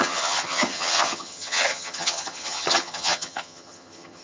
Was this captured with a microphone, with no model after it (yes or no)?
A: no